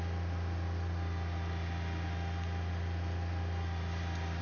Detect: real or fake real